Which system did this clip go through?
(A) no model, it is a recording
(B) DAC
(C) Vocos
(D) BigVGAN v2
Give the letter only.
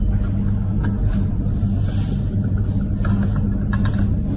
A